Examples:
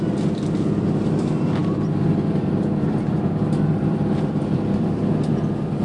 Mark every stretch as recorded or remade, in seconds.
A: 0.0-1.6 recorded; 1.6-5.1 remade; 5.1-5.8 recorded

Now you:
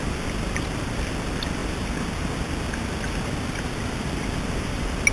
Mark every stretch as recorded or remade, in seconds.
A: 0.0-5.1 recorded

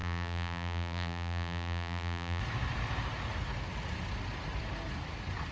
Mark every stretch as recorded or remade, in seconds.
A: 0.0-2.4 remade; 2.4-5.5 recorded

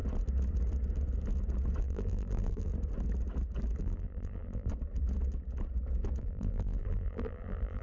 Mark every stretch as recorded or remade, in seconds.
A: 0.0-1.8 recorded; 1.8-2.7 remade; 2.7-3.8 recorded; 3.8-4.7 remade; 4.7-6.2 recorded; 6.2-7.8 remade

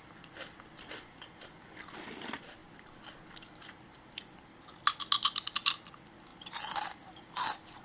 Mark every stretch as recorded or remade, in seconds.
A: 0.0-7.8 recorded